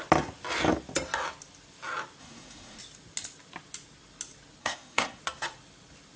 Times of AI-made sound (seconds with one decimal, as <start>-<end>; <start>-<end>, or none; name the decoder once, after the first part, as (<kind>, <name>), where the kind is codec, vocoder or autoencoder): 2.2-2.8 (codec, SNAC); 4.6-5.2